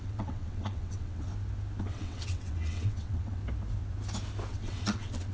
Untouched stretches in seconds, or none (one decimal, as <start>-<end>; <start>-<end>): 1.3-1.8; 3.4-4.5